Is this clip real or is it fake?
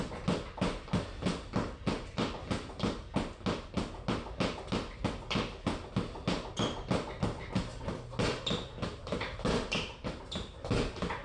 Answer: real